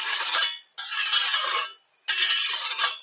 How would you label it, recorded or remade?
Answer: recorded